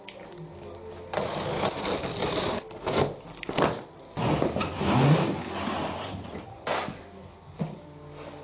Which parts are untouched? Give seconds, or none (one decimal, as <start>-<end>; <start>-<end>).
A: 0.0-8.4